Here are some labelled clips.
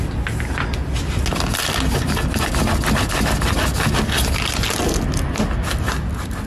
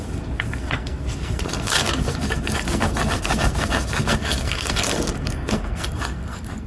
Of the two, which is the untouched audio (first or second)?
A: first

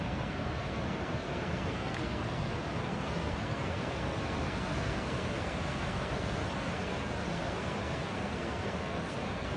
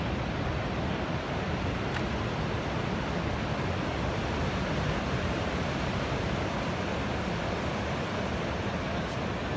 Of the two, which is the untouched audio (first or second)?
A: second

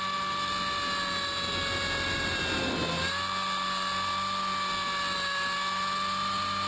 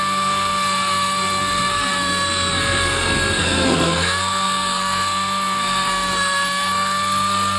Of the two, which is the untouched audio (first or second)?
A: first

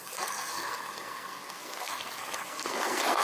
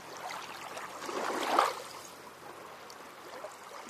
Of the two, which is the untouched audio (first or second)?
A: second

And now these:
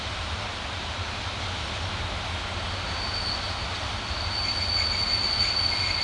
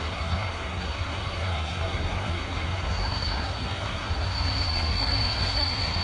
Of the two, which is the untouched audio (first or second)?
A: first